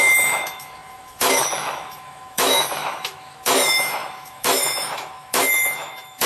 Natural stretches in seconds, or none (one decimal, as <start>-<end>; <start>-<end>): none